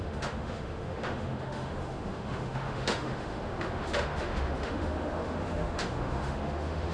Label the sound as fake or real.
fake